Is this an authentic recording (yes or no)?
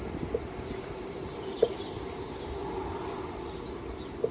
yes